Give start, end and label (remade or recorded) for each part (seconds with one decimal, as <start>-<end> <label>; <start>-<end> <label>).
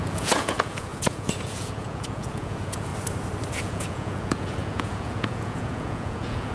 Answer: 0.0-2.9 remade; 2.9-3.6 recorded; 3.6-6.5 remade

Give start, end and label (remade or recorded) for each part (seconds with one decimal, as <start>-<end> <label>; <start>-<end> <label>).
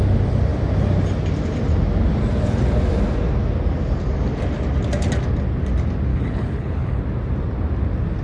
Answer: 0.0-6.1 recorded; 6.1-7.0 remade; 7.0-8.2 recorded